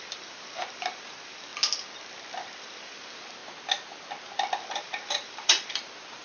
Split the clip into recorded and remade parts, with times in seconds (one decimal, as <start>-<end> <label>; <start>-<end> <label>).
0.0-1.5 remade; 1.5-2.6 recorded; 2.6-3.4 remade; 3.4-4.7 recorded; 4.7-6.2 remade